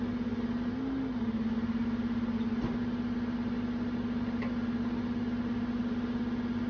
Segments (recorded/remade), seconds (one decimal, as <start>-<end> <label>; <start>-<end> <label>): 0.0-6.7 recorded